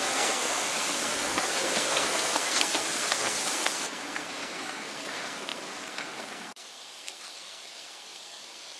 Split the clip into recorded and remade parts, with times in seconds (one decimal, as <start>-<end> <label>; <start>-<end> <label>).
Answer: 0.0-8.8 remade